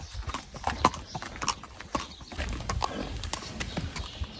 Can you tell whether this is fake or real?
real